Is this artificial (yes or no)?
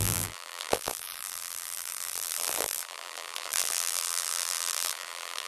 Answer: yes